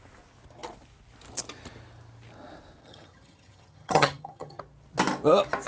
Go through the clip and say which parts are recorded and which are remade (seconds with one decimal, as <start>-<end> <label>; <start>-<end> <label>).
0.0-2.8 recorded; 2.8-4.6 remade; 4.6-5.7 recorded